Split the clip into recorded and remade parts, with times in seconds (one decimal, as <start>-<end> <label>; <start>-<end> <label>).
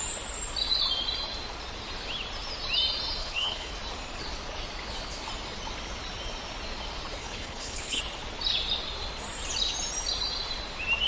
0.0-3.2 recorded; 3.2-3.7 remade; 3.7-7.2 recorded; 7.2-8.0 remade; 8.0-11.1 recorded